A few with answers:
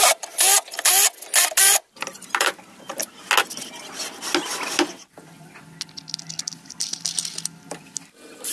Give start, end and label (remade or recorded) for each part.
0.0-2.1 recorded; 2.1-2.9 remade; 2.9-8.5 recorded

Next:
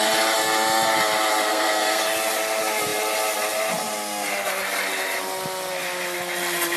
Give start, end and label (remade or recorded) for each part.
0.0-1.5 recorded; 1.5-2.0 remade; 2.0-6.8 recorded

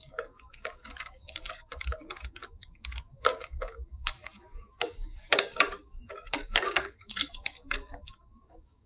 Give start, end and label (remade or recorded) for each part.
0.0-8.9 remade

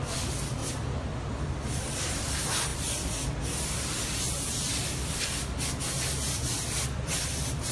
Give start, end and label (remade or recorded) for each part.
0.0-7.7 recorded